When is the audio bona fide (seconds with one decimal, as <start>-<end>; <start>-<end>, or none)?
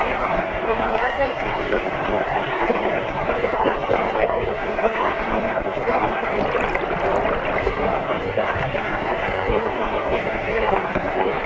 6.4-7.6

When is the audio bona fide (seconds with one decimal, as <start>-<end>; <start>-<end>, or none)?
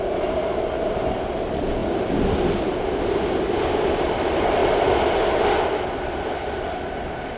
0.0-7.4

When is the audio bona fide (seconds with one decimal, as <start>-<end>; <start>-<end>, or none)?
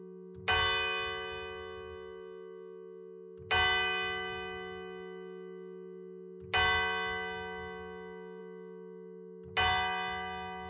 0.0-10.7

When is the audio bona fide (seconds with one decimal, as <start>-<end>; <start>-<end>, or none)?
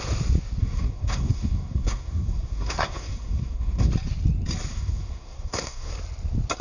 0.0-0.6; 3.9-4.7; 5.9-6.6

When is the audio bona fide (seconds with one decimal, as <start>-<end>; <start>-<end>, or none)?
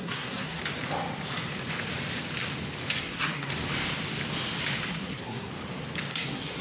0.6-3.0; 3.5-4.9; 5.5-6.1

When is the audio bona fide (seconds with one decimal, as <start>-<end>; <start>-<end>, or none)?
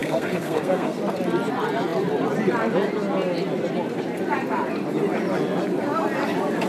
1.0-6.7